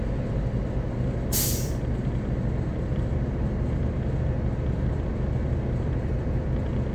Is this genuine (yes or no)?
yes